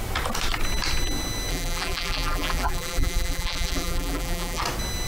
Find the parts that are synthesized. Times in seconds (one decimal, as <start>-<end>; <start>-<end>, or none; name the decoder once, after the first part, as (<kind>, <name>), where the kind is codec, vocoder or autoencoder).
1.5-4.6 (vocoder, BigVGAN v2)